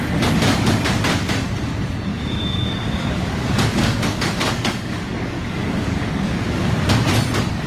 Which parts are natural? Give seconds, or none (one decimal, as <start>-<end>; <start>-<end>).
0.0-2.1; 6.7-7.7